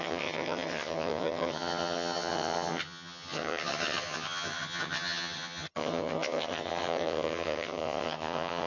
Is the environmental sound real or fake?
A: fake